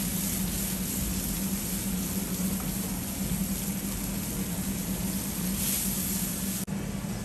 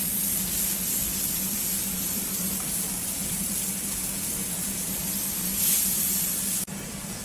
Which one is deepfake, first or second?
second